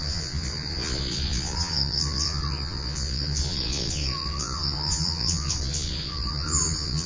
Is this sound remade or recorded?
remade